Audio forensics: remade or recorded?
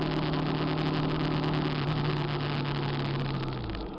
recorded